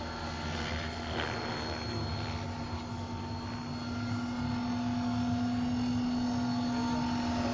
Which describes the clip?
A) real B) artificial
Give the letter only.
A